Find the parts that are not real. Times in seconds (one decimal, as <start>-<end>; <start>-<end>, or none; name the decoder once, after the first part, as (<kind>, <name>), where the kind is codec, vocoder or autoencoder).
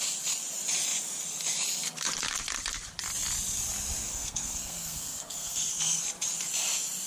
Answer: 4.1-6.0 (codec, SNAC)